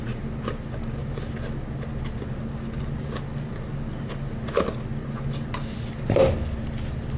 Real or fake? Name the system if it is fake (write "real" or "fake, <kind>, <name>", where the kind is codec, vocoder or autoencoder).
real